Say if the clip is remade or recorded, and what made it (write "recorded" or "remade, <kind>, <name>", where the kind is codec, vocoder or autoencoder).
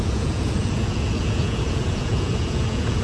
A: remade, vocoder, Vocos